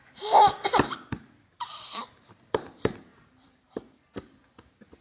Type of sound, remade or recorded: remade